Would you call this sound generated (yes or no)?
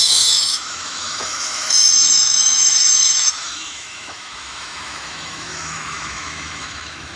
yes